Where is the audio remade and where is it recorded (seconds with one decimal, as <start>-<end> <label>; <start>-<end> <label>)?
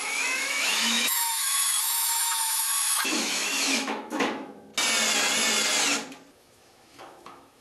0.0-4.7 remade; 4.7-6.3 recorded; 6.3-7.6 remade